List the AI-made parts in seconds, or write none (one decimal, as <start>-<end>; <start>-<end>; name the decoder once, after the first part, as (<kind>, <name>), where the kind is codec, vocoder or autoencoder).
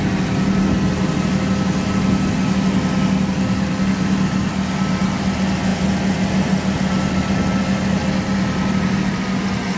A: none